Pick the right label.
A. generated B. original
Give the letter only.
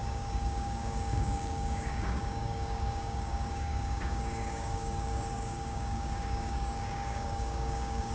A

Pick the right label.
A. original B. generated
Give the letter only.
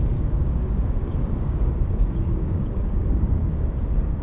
B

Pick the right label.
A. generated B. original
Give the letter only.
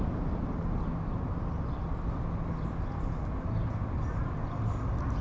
B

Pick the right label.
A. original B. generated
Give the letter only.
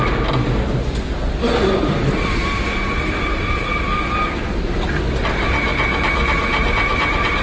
A